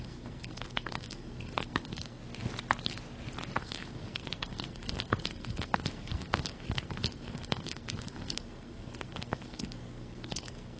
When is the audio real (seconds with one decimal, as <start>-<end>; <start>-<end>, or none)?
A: 2.2-3.6